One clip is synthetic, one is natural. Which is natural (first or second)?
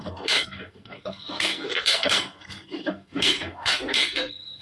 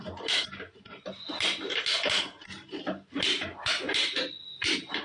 second